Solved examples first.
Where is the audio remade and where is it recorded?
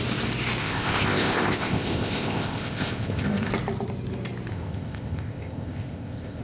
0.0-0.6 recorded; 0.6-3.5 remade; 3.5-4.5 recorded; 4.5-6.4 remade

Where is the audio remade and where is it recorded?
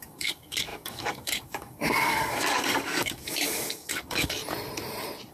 0.0-4.4 remade; 4.4-5.3 recorded